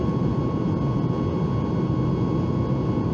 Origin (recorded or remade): recorded